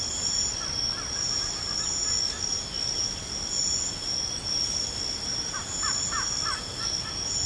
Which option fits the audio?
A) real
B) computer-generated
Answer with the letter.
A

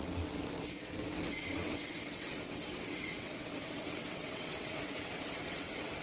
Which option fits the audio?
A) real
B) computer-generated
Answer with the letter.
B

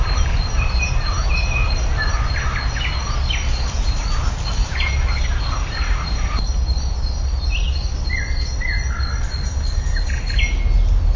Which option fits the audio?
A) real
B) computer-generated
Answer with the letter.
A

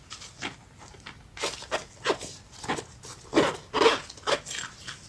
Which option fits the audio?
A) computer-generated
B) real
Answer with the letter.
B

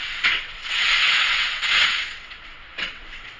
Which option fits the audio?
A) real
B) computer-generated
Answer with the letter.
B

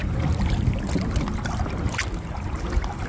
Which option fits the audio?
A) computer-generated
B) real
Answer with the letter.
B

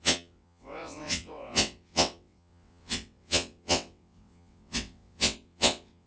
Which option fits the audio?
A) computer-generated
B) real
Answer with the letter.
A